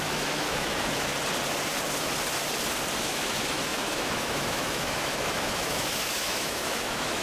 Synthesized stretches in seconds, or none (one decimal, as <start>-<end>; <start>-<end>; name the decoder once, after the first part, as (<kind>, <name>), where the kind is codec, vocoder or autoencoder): 0.0-1.1 (autoencoder, DAC-VAE); 3.0-7.2